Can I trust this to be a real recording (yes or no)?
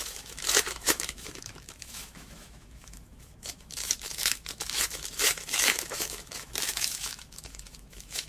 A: no